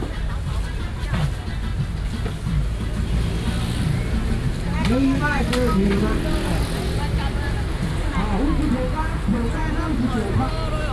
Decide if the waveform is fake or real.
real